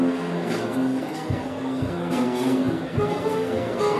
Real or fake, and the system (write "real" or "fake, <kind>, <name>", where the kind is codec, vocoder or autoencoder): fake, codec, SNAC